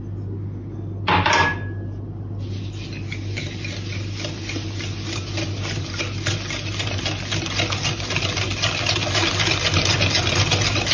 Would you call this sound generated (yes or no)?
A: no